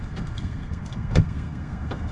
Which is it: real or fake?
fake